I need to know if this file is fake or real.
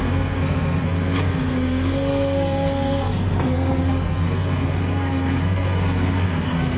fake